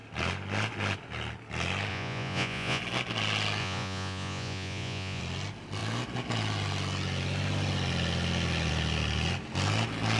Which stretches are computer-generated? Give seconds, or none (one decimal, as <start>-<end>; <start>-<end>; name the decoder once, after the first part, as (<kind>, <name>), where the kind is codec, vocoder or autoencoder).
1.9-2.8 (vocoder, Vocos); 3.6-5.2